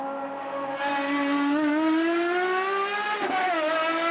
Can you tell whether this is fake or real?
real